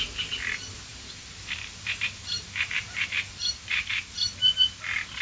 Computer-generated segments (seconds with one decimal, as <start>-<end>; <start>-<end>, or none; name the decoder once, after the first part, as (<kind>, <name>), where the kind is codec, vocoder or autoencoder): 0.9-4.0 (vocoder, BigVGAN v2)

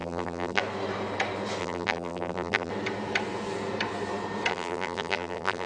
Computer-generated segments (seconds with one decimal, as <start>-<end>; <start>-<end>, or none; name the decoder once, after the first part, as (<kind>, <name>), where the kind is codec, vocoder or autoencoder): 0.0-0.6 (vocoder, BigVGAN v2); 1.6-2.7; 4.5-5.7

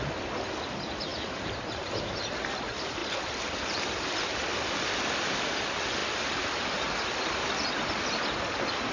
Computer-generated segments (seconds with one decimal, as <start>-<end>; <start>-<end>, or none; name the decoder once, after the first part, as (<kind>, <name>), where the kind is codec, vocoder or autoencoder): 3.0-3.9 (vocoder, BigVGAN v2); 6.0-6.6

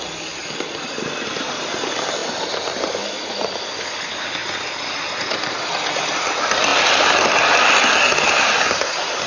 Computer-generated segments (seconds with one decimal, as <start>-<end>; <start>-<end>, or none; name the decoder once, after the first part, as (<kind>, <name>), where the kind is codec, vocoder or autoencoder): 2.2-3.8 (vocoder, BigVGAN v2); 6.7-7.7

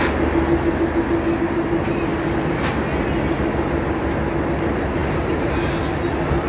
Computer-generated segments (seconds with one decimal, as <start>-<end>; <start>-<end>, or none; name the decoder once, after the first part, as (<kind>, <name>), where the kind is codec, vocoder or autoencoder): 2.1-2.7 (vocoder, BigVGAN v2); 5.0-5.8

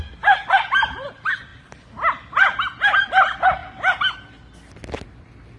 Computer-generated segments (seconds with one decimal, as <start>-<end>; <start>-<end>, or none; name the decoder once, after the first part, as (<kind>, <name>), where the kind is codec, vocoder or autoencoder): none